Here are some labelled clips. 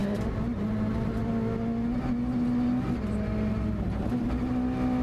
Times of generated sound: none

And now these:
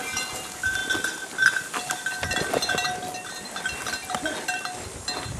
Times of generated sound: none

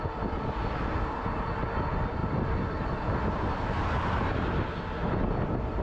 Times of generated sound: none

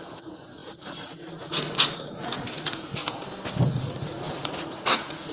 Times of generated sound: 0.0-3.0 (vocoder, Vocos); 3.7-5.3

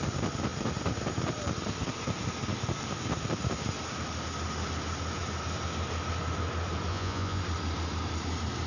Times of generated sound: 6.9-7.4 (vocoder, Vocos)